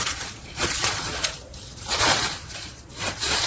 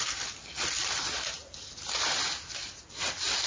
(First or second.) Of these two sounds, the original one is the second